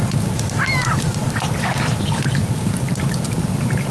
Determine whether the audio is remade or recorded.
recorded